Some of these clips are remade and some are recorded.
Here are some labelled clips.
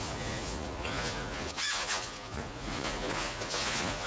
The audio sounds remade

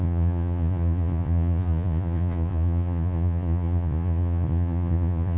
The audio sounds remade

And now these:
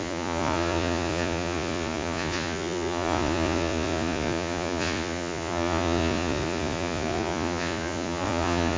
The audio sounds remade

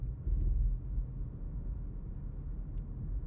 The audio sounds recorded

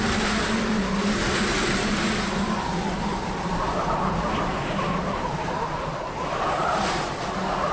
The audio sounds recorded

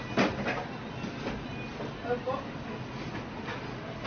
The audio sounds recorded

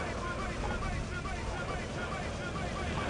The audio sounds recorded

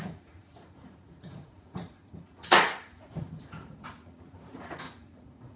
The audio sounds remade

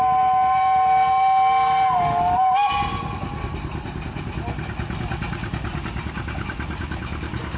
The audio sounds recorded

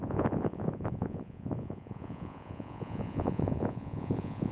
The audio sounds remade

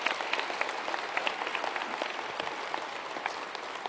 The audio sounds recorded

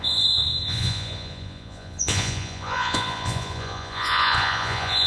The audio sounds remade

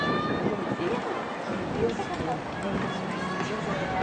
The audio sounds recorded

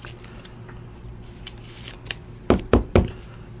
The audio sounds recorded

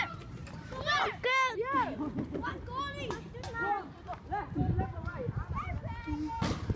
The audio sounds recorded